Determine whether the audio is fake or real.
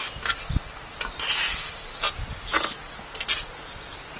real